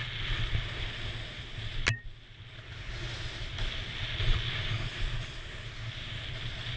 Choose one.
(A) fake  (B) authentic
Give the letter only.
B